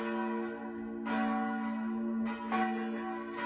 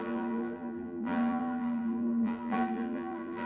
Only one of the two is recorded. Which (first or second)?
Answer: first